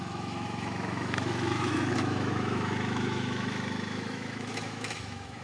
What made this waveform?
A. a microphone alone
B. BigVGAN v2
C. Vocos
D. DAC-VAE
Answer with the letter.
D